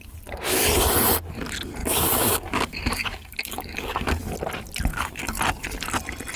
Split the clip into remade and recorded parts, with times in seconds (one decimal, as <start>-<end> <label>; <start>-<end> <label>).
0.0-1.8 recorded; 1.8-4.2 remade; 4.2-4.9 recorded; 4.9-5.4 remade; 5.4-6.4 recorded